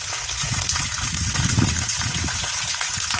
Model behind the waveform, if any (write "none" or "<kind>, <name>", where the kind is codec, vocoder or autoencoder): vocoder, Vocos